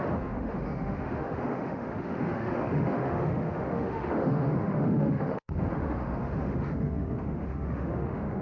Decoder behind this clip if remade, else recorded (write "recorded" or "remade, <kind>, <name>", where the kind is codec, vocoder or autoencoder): remade, autoencoder, DAC-VAE